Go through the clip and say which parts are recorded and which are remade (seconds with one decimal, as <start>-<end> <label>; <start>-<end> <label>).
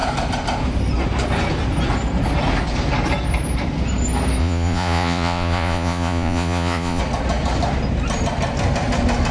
0.0-4.4 recorded; 4.4-7.0 remade; 7.0-9.3 recorded